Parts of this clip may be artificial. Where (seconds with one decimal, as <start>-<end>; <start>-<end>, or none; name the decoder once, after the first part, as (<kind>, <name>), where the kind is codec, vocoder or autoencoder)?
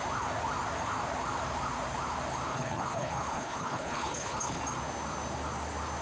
2.5-4.6 (codec, HILCodec)